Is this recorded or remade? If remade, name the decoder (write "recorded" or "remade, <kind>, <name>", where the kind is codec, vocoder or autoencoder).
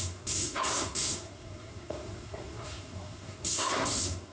remade, codec, SNAC